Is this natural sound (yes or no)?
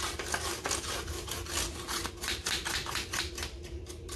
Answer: yes